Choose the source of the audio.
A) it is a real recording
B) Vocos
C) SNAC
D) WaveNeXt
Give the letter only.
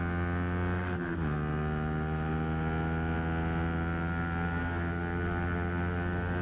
A